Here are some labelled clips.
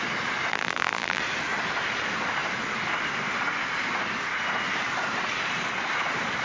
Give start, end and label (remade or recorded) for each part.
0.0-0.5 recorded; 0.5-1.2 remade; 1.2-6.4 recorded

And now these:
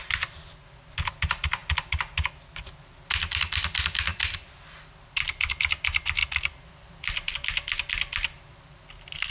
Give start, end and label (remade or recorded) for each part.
0.0-4.1 recorded; 4.1-5.5 remade; 5.5-6.2 recorded; 6.2-7.3 remade; 7.3-9.3 recorded

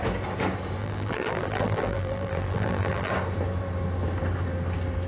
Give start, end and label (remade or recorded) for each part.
0.0-0.8 recorded; 0.8-3.1 remade; 3.1-5.1 recorded

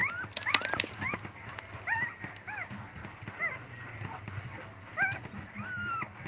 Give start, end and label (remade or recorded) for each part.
0.0-3.0 recorded; 3.0-4.4 remade; 4.4-6.3 recorded

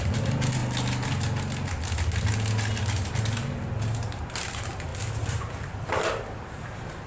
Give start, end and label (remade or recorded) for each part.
0.0-0.6 remade; 0.6-4.2 recorded; 4.2-7.1 remade

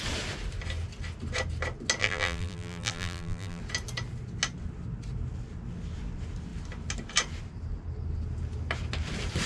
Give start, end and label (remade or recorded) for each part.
0.0-2.0 recorded; 2.0-3.6 remade; 3.6-9.5 recorded

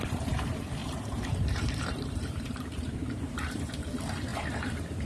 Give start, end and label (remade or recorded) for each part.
0.0-0.8 recorded; 0.8-3.9 remade; 3.9-4.3 recorded; 4.3-5.1 remade

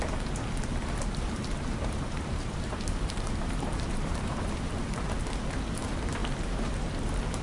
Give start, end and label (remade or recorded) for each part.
0.0-0.7 recorded; 0.7-5.0 remade; 5.0-6.2 recorded; 6.2-6.7 remade; 6.7-7.4 recorded